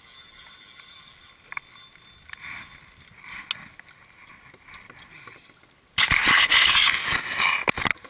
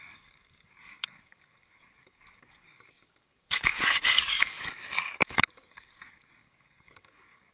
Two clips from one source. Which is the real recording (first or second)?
first